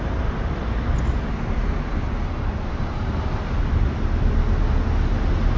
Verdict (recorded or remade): recorded